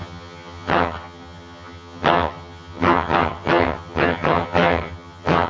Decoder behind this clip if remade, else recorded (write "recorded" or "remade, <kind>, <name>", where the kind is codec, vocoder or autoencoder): remade, vocoder, HiFi-GAN